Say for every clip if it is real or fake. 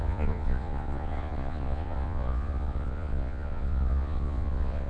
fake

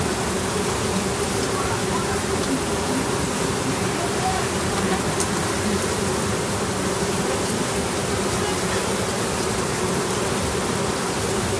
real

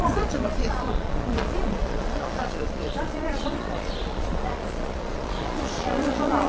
fake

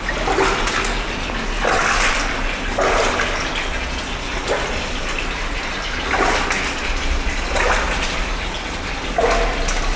real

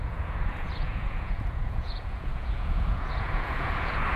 fake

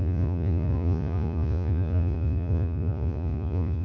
fake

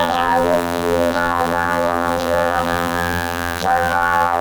fake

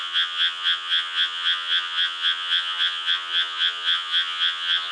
fake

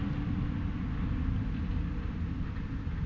real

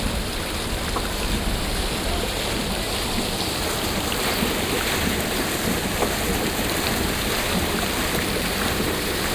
real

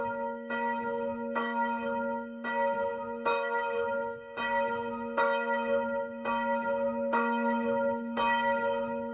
fake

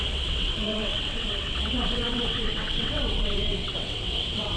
fake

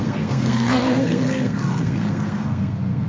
fake